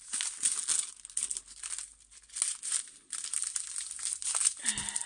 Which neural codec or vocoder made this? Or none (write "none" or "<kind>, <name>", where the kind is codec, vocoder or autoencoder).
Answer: none